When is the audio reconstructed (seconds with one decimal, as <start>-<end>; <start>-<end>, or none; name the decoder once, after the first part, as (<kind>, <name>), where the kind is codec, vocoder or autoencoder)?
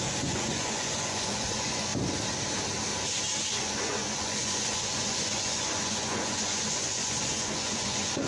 0.0-1.9 (vocoder, Vocos); 3.5-8.3